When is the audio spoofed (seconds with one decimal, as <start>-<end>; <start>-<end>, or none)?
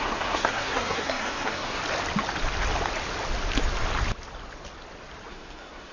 0.0-1.8; 5.3-5.9